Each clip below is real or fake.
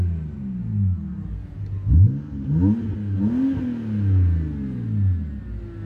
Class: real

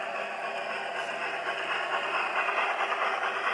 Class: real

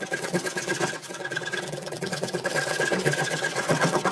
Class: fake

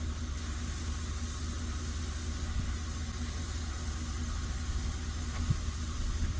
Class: real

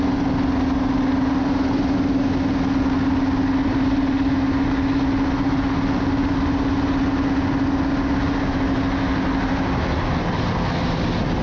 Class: real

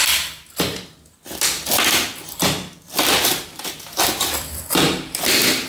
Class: real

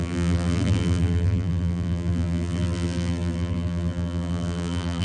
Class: fake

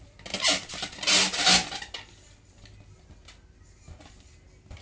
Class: real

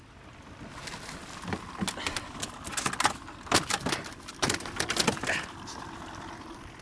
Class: real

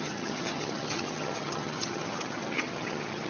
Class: fake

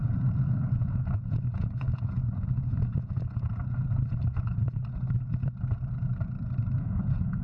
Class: fake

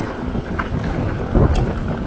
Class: real